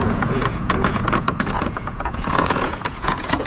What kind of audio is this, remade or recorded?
remade